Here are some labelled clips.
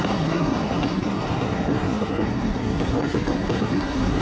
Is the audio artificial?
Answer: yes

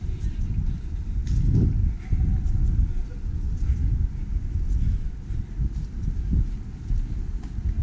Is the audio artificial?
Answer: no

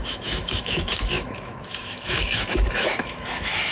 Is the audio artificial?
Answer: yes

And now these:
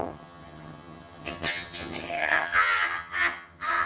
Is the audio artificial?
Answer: yes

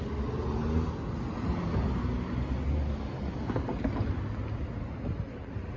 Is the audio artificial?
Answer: no